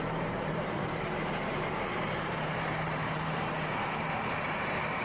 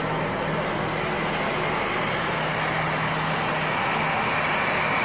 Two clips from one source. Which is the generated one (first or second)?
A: first